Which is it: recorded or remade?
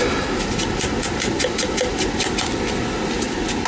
recorded